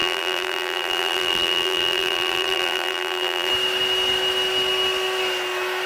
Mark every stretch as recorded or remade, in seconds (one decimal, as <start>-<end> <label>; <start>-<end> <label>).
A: 0.0-3.5 remade; 3.5-5.9 recorded